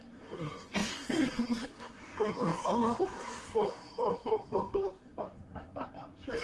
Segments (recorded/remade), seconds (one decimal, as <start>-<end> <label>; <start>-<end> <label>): 0.0-6.4 remade